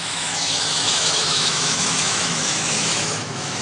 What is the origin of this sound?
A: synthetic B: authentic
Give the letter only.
A